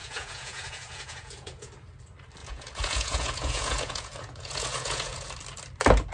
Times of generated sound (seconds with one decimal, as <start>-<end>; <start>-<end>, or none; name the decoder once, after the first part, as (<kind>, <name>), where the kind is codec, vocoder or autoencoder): 0.0-1.7 (vocoder, Vocos); 2.4-5.3